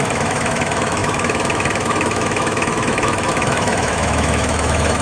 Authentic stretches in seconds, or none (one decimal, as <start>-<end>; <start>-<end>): none